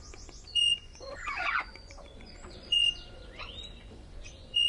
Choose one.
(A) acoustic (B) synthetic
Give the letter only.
B